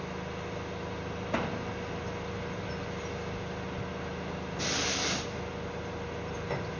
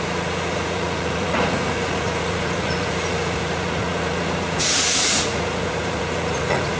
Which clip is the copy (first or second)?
second